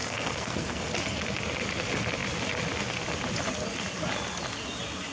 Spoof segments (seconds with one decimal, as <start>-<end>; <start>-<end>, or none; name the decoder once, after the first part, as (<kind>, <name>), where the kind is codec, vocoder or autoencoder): 0.0-0.8 (codec, SNAC)